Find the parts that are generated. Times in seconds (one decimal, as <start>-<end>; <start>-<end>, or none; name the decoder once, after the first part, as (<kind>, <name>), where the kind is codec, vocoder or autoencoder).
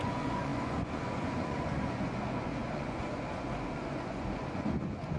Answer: 0.0-5.2 (vocoder, Vocos)